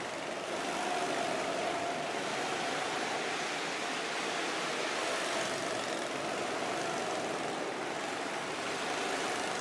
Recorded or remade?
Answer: remade